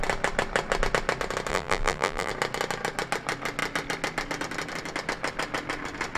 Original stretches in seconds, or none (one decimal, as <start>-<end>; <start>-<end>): 0.0-1.5; 2.3-6.2